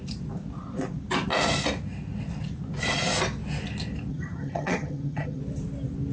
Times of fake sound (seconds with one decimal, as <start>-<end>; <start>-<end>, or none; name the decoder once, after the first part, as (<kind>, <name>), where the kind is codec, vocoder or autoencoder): 4.1-5.4 (vocoder, HiFi-GAN)